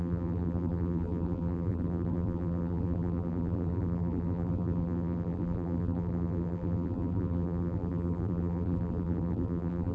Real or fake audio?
fake